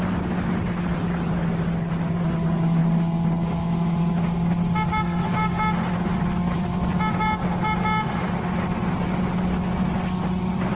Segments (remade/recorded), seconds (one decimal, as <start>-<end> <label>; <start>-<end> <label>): 0.0-10.8 recorded